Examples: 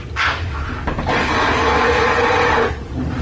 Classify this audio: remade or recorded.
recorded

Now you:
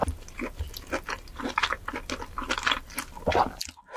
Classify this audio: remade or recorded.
recorded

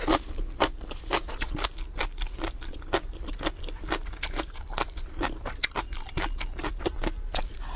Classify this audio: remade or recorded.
recorded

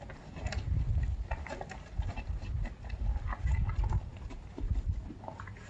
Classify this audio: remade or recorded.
recorded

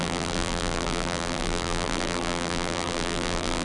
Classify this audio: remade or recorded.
remade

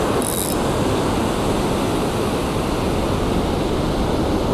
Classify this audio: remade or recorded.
recorded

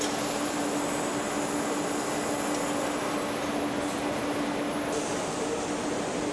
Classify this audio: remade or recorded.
recorded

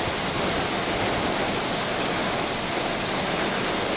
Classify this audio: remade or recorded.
remade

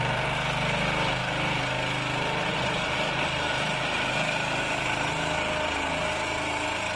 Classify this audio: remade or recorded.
recorded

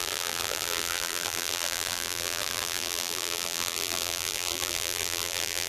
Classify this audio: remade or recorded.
remade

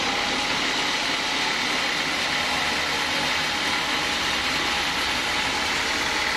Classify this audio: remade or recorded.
recorded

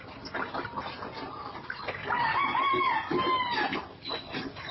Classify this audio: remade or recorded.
recorded